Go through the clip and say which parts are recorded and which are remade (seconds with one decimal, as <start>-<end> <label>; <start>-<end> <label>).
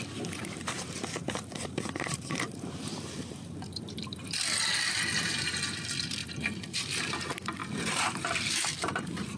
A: 0.0-0.4 recorded; 0.4-4.3 remade; 4.3-6.2 recorded; 6.2-7.0 remade; 7.0-7.6 recorded; 7.6-9.4 remade